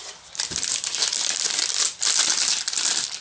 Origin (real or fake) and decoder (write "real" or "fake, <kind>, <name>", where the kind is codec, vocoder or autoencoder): fake, vocoder, BigVGAN v2